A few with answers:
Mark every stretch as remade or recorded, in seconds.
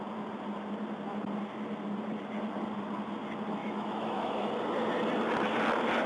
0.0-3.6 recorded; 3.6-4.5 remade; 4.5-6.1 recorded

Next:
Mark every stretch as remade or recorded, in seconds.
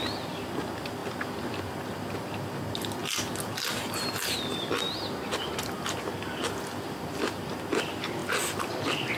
0.0-9.2 recorded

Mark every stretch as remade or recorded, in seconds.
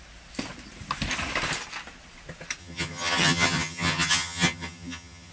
0.0-2.6 recorded; 2.6-5.3 remade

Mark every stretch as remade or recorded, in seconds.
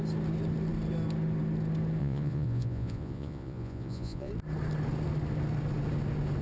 0.0-2.0 recorded; 2.0-4.3 remade; 4.3-6.4 recorded